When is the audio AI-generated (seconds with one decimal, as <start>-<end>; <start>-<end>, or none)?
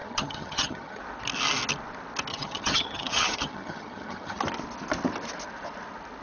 0.0-1.0; 2.3-4.4